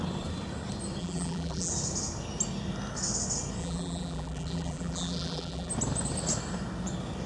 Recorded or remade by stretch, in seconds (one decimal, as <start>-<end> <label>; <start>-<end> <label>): 0.0-1.0 recorded; 1.0-1.7 remade; 1.7-3.6 recorded; 3.6-5.7 remade; 5.7-7.3 recorded

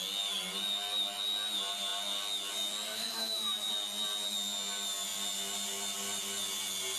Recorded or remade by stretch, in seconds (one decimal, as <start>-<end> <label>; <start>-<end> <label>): 0.0-2.9 recorded; 2.9-3.7 remade; 3.7-7.0 recorded